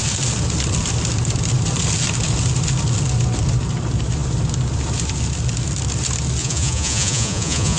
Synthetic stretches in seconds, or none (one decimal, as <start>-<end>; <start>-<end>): 6.4-7.8